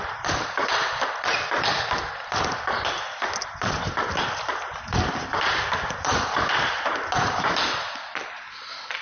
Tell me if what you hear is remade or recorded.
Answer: recorded